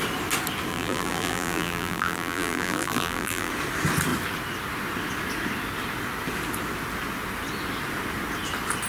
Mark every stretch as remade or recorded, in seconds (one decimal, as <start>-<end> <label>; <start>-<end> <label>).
0.0-0.7 recorded; 0.7-3.5 remade; 3.5-8.9 recorded